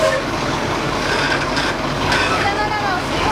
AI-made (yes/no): yes